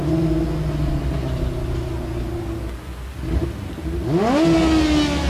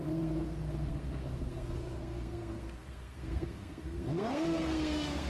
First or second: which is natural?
first